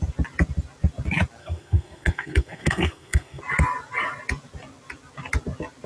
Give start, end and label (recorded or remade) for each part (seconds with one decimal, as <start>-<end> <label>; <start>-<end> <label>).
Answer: 0.0-1.4 recorded; 1.4-3.4 remade; 3.4-5.9 recorded